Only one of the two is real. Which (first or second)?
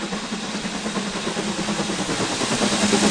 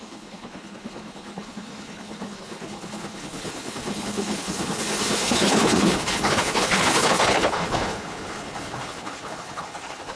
first